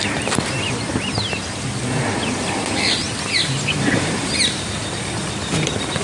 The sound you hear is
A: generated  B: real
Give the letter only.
B